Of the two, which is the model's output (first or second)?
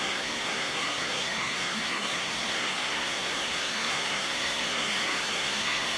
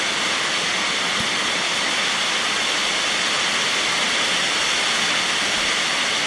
first